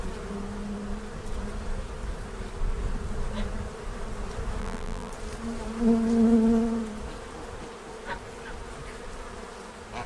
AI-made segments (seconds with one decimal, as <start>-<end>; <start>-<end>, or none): 4.6-5.1